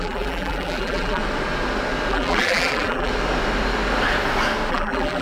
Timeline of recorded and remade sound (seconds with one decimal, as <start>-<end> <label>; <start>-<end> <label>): 0.0-1.2 remade; 1.2-2.1 recorded; 2.1-3.1 remade; 3.1-4.7 recorded; 4.7-5.2 remade